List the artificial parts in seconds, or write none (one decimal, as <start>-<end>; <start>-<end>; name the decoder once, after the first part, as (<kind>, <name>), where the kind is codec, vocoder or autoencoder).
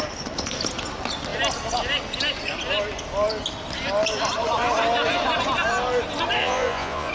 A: 6.4-7.1 (vocoder, Vocos)